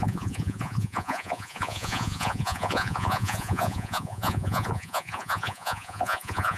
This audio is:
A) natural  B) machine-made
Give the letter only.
B